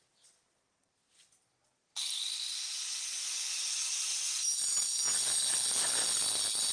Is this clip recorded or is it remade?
recorded